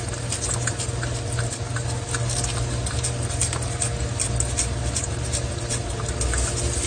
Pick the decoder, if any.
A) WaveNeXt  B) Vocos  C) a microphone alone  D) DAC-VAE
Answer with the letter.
C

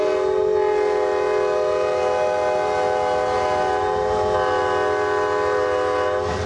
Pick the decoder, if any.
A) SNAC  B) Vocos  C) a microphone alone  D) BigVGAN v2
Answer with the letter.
C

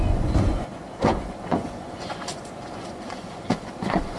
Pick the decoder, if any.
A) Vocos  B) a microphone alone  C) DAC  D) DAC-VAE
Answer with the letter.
A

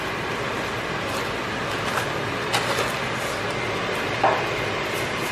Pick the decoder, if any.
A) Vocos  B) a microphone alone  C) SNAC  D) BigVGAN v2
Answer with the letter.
B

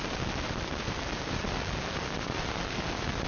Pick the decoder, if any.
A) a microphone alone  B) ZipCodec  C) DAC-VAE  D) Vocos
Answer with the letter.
A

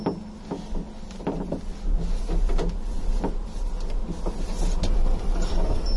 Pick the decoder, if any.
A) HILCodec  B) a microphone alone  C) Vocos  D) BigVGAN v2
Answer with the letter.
B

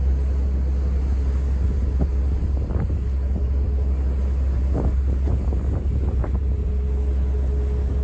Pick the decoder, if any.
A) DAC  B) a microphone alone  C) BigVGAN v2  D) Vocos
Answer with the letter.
B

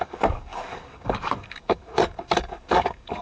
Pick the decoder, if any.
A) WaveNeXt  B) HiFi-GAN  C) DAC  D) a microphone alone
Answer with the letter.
C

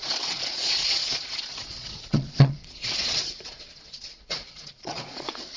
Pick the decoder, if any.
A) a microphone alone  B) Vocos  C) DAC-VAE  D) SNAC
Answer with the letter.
B